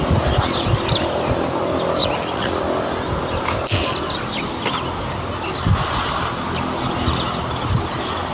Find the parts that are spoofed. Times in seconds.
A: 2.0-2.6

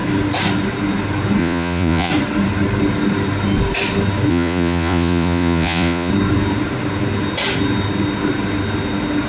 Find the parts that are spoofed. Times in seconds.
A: 1.4-2.1; 4.3-6.1

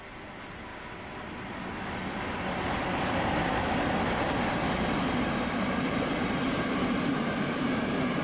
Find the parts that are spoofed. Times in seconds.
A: 0.0-8.2